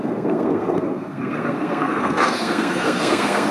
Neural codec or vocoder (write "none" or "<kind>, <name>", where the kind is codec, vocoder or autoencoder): codec, SNAC